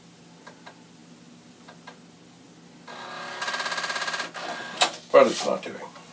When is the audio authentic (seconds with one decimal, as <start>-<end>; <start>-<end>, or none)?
0.0-6.1